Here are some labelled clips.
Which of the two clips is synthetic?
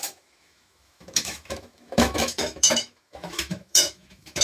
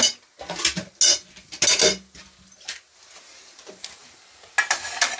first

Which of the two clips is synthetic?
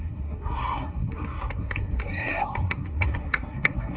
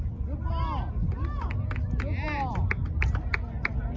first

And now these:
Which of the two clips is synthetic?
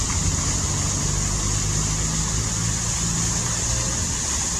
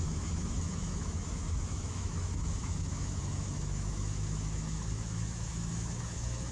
second